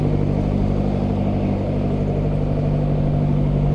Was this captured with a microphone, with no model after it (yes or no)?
yes